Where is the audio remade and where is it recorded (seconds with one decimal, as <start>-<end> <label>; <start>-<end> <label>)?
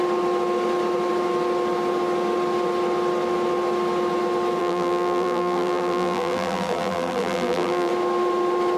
0.0-4.6 recorded; 4.6-7.9 remade; 7.9-8.8 recorded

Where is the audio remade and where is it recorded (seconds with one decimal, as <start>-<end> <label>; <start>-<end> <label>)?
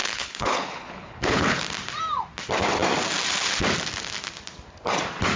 0.0-1.6 remade; 1.6-5.4 recorded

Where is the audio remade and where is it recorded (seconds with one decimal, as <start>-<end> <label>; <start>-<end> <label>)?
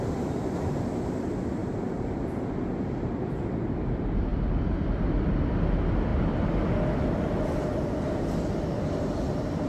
0.0-1.6 recorded; 1.6-2.3 remade; 2.3-9.7 recorded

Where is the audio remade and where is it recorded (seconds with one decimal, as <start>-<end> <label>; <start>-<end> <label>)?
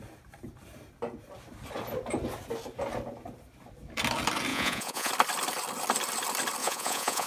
0.0-4.5 recorded; 4.5-5.1 remade; 5.1-6.6 recorded; 6.6-7.3 remade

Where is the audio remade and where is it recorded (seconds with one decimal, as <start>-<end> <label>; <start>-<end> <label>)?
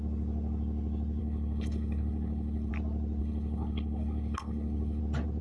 0.0-1.2 recorded; 1.2-2.7 remade; 2.7-3.2 recorded; 3.2-5.0 remade; 5.0-5.4 recorded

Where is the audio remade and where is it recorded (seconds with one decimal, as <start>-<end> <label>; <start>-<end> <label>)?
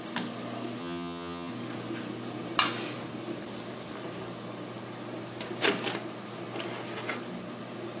0.0-0.8 recorded; 0.8-1.5 remade; 1.5-8.0 recorded